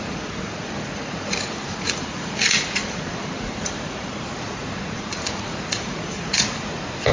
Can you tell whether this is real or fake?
fake